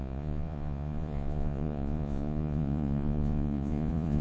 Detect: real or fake fake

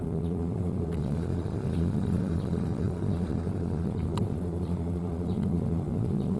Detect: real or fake fake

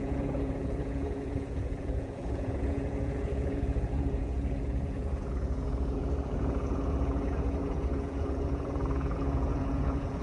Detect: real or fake fake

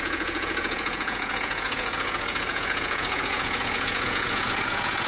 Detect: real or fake fake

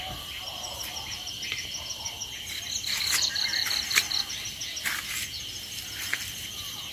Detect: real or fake real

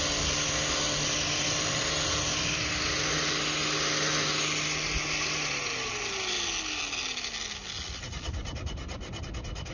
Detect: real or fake real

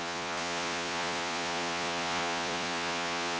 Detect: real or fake fake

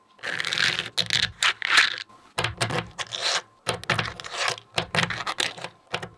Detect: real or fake real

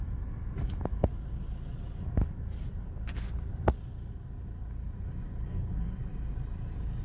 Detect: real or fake real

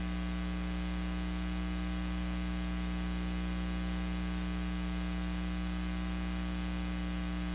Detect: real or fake real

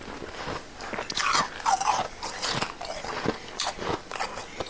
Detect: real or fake real